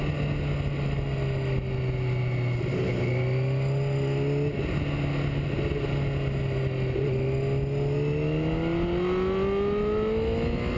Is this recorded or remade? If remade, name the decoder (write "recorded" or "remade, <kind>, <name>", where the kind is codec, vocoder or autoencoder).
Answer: recorded